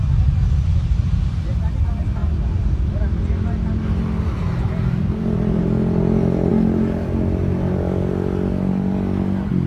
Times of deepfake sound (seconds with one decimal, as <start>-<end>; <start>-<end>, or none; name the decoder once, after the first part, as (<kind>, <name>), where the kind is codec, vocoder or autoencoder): 0.7-1.6 (vocoder, BigVGAN v2)

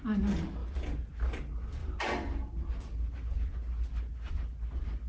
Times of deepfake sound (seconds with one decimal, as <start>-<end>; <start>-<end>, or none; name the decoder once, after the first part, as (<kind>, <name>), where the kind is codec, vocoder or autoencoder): none